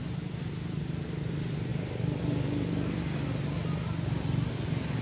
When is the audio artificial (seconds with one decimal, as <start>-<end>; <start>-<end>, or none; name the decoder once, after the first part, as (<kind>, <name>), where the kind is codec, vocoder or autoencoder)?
none